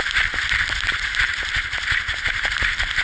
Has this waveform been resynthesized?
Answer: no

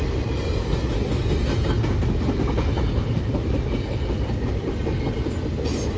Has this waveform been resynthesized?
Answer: no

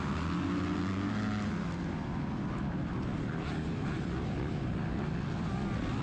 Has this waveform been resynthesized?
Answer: no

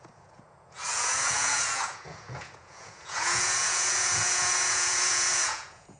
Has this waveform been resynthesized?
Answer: yes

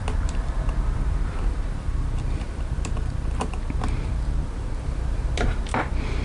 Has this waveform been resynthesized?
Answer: yes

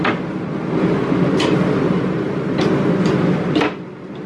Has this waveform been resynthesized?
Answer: no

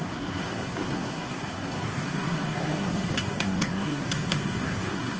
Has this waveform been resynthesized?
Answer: yes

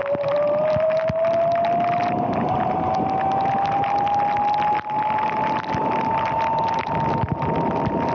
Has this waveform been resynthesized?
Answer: no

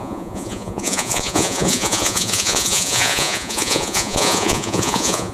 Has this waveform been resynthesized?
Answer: yes